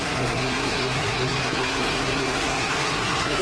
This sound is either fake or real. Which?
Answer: fake